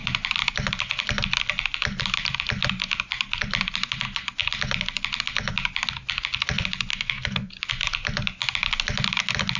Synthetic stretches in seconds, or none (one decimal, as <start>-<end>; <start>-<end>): 6.9-7.5